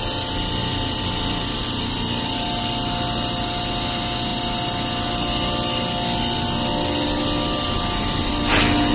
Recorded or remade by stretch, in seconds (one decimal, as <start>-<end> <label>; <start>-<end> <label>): 0.0-0.6 recorded; 0.6-1.6 remade; 1.6-8.9 recorded